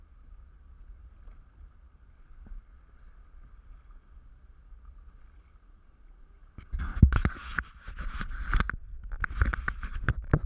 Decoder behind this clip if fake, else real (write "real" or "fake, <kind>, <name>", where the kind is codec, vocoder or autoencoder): real